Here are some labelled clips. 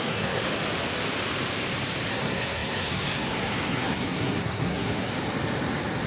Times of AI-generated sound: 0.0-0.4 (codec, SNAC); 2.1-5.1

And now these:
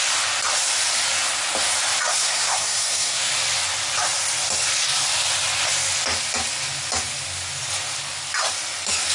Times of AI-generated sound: 2.1-3.2 (codec, SNAC)

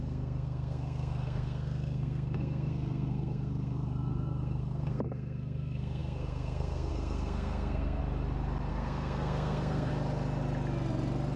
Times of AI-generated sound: 0.0-8.0 (codec, SNAC); 8.7-9.9

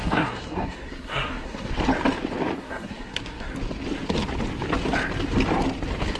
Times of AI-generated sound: 0.0-1.7 (codec, SNAC); 2.6-3.5